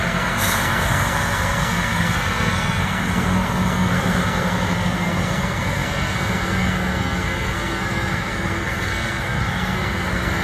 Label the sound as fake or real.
fake